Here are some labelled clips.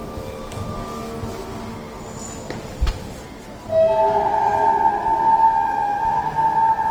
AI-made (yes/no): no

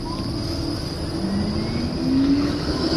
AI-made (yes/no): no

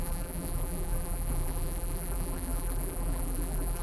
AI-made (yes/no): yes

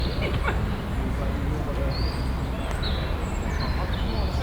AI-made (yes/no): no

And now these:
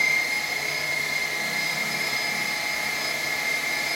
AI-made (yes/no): no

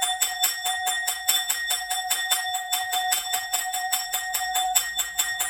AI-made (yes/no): yes